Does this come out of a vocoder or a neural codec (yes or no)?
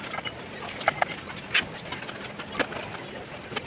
no